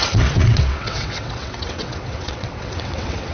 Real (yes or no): no